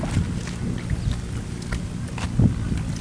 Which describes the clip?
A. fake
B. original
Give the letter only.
B